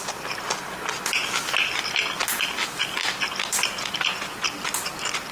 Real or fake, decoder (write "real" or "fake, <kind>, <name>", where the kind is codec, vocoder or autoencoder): real